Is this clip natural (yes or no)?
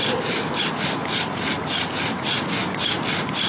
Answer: yes